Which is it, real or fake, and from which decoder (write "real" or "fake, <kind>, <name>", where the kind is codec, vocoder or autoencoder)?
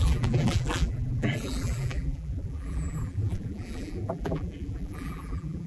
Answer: fake, vocoder, BigVGAN v2